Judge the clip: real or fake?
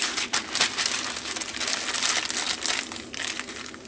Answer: real